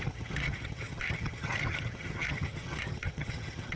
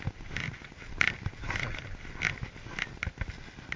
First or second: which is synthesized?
first